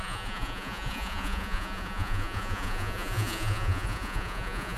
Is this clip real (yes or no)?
no